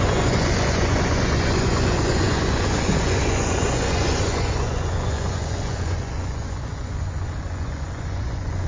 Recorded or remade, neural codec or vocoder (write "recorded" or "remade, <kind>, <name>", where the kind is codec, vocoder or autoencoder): remade, vocoder, Vocos